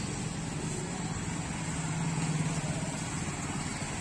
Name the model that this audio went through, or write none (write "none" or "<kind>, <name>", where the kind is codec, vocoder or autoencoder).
none